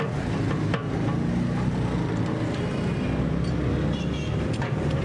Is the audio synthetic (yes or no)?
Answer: no